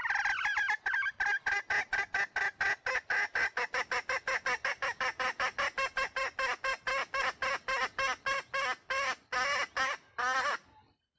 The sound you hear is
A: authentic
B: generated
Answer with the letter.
A